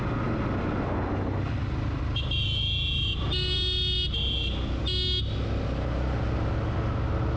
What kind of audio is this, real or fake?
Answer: real